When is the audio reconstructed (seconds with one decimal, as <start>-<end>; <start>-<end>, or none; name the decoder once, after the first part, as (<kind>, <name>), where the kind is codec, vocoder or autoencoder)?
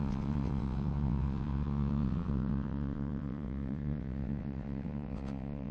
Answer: 0.0-5.7 (vocoder, WaveNeXt)